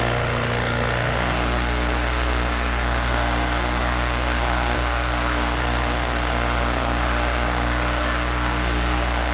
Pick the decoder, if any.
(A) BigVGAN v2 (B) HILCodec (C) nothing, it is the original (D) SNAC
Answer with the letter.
D